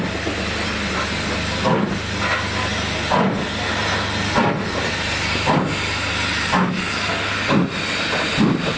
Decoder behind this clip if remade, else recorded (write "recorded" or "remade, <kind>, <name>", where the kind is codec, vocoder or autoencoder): recorded